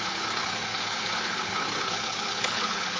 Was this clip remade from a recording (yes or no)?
yes